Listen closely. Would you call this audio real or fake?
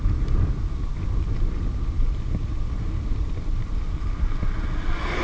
real